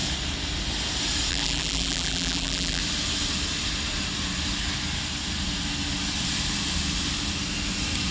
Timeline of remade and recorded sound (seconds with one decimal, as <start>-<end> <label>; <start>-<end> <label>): 0.0-1.3 recorded; 1.3-2.8 remade; 2.8-8.1 recorded